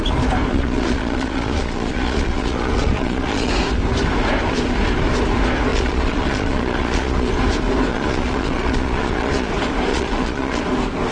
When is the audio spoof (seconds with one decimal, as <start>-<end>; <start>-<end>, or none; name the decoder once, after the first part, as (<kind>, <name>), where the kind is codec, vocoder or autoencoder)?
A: 0.5-3.5 (vocoder, Vocos); 5.7-7.3; 7.9-9.5; 9.9-10.6